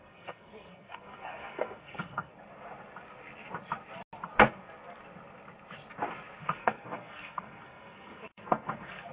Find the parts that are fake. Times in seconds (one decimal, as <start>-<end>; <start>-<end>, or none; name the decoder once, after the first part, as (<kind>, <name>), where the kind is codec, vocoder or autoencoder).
0.0-2.3 (codec, SNAC); 6.4-9.1